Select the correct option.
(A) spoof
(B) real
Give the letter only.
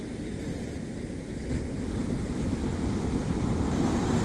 B